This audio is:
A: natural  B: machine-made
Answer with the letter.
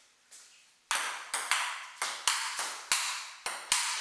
A